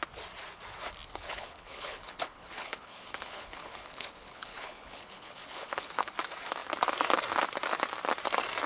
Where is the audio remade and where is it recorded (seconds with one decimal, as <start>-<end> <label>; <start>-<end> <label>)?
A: 0.0-1.1 recorded; 1.1-6.1 remade; 6.1-8.7 recorded